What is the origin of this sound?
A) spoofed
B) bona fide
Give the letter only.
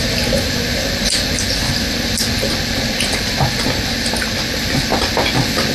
B